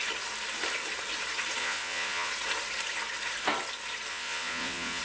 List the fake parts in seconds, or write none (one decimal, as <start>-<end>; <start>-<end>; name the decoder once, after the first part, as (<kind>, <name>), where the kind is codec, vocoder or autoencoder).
1.6-2.3 (vocoder, Vocos); 4.1-5.0